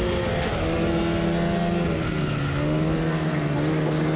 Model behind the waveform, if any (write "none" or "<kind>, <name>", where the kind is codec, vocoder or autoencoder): none